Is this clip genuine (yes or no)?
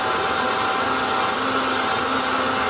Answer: yes